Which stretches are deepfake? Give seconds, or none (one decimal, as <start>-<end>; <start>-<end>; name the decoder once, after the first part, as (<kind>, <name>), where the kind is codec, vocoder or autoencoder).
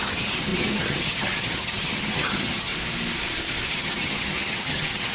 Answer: 0.0-2.7 (vocoder, HiFi-GAN); 3.7-5.1